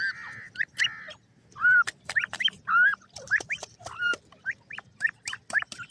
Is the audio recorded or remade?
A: recorded